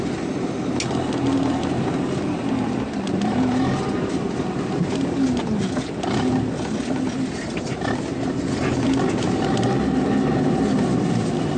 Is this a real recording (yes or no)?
yes